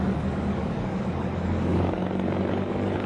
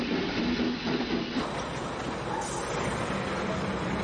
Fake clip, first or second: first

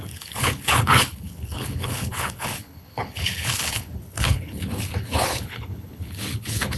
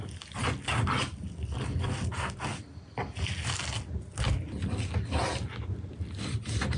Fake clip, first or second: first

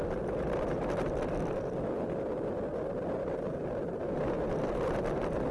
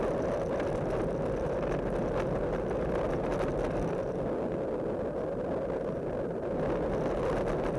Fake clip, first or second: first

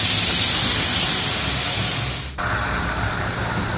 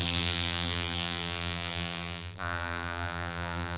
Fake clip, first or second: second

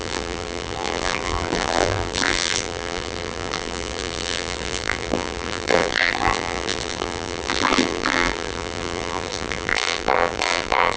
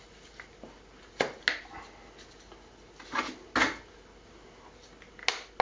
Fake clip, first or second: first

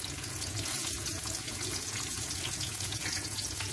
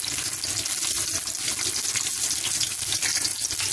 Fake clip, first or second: first